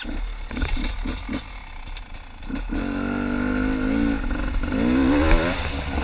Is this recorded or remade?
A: recorded